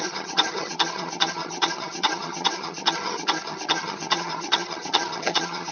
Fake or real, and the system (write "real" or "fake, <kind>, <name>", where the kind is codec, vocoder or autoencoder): fake, vocoder, HiFi-GAN